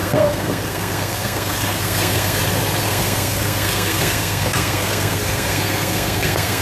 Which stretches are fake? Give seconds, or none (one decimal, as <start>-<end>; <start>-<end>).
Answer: 0.0-2.4; 2.8-6.6